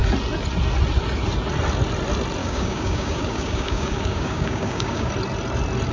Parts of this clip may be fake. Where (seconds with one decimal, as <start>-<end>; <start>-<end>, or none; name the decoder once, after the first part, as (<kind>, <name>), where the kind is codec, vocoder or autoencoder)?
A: 2.4-5.1 (codec, DAC)